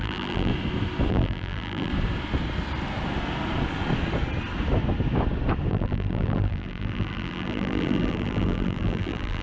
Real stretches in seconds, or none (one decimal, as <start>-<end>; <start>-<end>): 0.5-1.1; 1.9-5.7